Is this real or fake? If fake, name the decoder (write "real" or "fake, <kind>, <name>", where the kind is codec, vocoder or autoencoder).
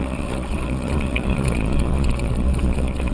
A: fake, vocoder, Vocos